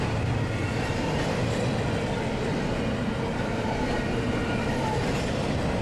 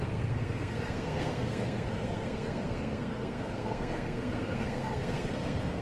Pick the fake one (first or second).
second